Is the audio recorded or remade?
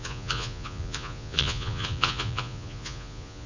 remade